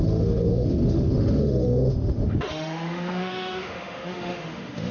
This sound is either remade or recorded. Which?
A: remade